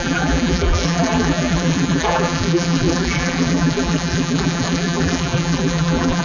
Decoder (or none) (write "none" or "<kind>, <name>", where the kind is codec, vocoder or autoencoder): vocoder, BigVGAN v2